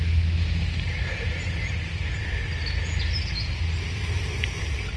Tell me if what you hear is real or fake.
real